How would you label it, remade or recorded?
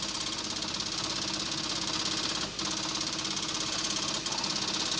recorded